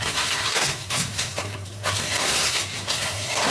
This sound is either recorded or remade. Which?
remade